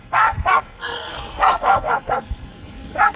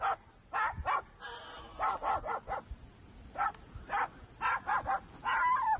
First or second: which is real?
second